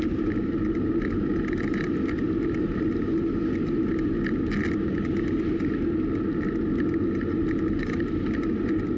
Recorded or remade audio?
recorded